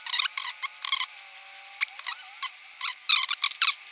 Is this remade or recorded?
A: recorded